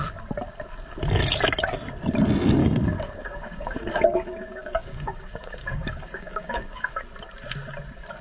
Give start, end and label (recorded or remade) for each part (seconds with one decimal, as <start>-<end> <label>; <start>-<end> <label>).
0.0-2.6 recorded; 2.6-7.0 remade; 7.0-8.2 recorded